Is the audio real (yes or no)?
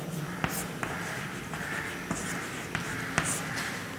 yes